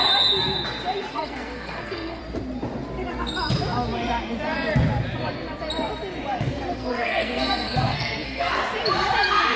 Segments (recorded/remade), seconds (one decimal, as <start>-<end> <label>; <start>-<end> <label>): 0.0-1.1 recorded; 1.1-2.2 remade; 2.2-6.3 recorded; 6.3-8.6 remade; 8.6-9.6 recorded

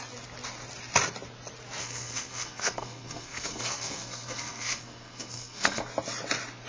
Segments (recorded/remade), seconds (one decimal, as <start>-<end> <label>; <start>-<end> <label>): 0.0-1.8 recorded; 1.8-5.8 remade; 5.8-6.7 recorded